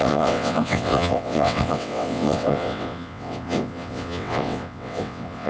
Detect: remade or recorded remade